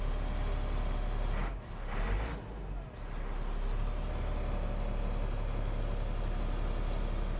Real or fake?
real